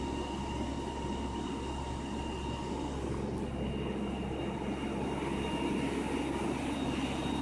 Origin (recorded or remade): recorded